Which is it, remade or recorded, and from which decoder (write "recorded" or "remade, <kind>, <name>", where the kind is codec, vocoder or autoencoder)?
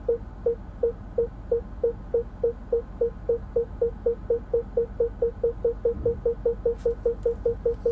recorded